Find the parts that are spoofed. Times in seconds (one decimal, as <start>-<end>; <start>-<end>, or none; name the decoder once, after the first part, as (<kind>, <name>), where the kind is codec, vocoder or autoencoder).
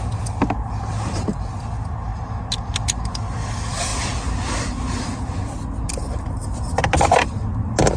none